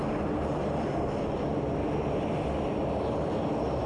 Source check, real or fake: real